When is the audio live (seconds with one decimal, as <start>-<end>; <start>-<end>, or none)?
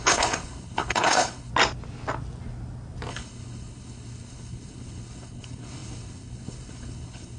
1.5-3.1